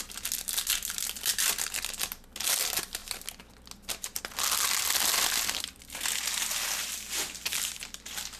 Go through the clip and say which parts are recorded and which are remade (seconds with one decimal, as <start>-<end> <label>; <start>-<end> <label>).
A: 0.0-8.4 recorded